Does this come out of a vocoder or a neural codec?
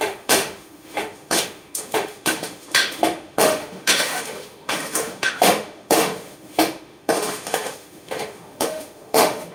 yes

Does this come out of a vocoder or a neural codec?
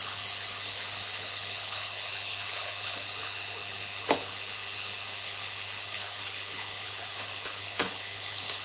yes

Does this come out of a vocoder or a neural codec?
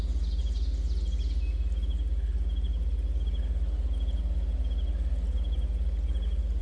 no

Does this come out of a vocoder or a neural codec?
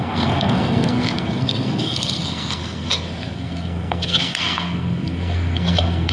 yes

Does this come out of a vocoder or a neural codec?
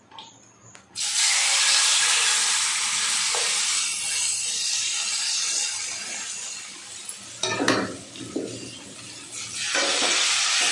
no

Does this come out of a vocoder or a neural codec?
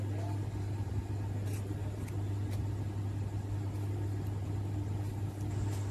no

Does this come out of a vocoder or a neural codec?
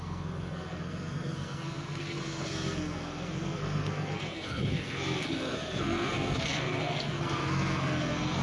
yes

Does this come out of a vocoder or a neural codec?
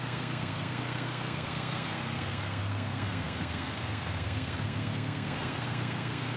yes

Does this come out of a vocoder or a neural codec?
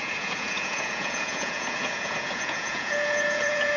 yes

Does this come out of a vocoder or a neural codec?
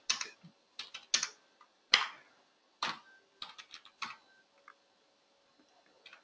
no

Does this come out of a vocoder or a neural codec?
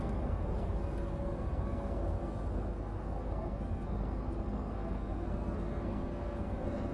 yes